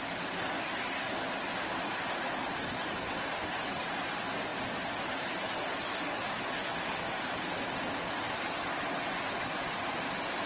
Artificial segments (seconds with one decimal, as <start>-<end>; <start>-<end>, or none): none